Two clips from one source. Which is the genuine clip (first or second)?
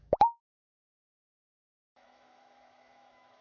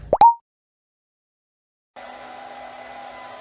second